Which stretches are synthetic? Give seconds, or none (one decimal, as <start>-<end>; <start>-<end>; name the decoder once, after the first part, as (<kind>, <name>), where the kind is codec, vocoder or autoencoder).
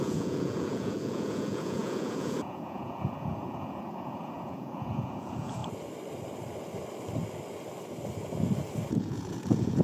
0.0-5.6 (vocoder, Vocos); 9.0-9.8